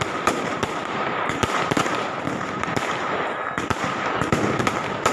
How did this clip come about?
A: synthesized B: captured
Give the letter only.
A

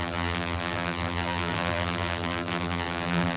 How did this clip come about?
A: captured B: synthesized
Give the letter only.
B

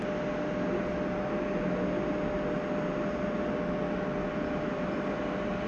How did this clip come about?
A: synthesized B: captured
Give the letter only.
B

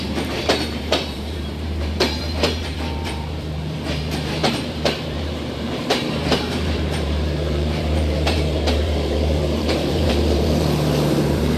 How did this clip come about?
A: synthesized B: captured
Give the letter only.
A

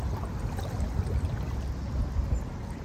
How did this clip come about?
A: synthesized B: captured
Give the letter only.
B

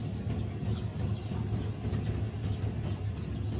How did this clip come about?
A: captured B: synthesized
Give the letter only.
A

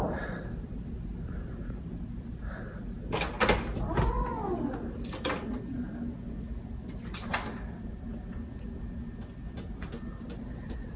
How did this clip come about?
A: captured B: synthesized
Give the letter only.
A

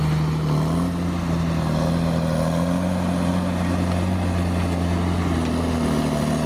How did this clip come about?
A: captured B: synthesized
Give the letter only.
A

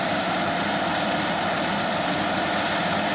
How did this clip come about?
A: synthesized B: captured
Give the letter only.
B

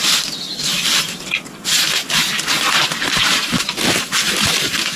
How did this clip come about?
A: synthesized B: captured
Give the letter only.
A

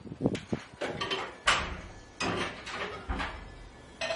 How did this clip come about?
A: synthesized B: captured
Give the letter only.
B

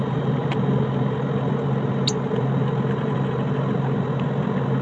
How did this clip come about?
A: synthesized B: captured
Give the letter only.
B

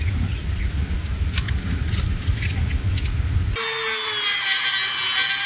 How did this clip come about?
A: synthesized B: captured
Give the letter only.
B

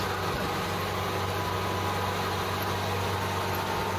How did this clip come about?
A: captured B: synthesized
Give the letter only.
A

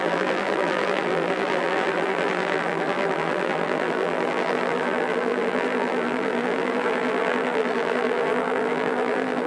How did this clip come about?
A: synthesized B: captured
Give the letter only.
A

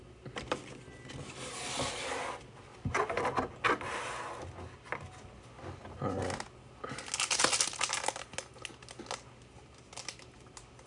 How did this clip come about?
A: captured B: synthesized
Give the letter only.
A